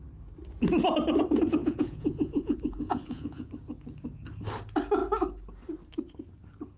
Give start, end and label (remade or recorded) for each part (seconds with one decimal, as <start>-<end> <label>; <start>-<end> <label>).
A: 0.0-1.6 recorded; 1.6-3.5 remade; 3.5-6.8 recorded